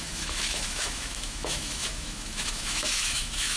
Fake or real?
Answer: fake